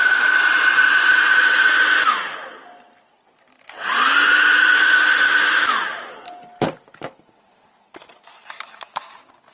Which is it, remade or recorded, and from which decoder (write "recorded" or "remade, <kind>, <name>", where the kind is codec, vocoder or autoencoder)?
recorded